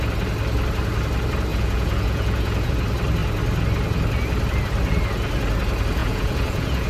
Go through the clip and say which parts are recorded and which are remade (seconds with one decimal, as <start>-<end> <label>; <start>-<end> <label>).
0.0-1.5 recorded; 1.5-2.7 remade; 2.7-6.0 recorded; 6.0-6.9 remade